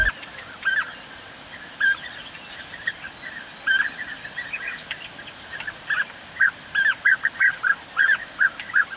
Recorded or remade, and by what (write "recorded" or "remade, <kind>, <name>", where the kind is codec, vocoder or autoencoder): recorded